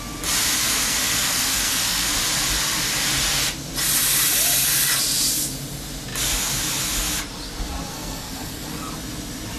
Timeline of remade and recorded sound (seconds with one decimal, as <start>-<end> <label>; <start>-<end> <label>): 0.0-0.6 recorded; 0.6-2.1 remade; 2.1-7.9 recorded; 7.9-8.9 remade; 8.9-9.6 recorded